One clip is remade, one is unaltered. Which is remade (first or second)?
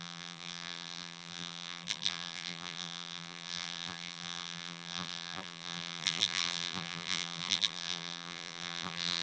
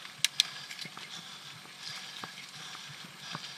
first